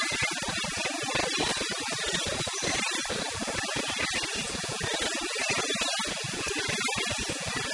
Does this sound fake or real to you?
real